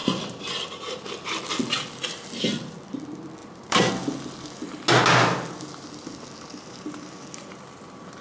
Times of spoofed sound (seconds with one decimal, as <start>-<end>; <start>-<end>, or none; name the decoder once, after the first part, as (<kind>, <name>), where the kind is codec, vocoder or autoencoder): 3.4-3.9 (vocoder, BigVGAN v2)